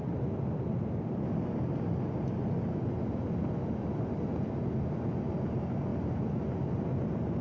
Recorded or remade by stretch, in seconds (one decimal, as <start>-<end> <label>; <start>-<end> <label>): 0.0-7.4 recorded